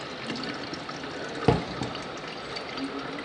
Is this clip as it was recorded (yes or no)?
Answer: yes